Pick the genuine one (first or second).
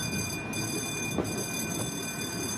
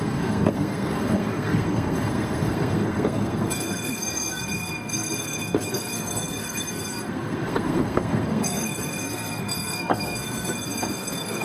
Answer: first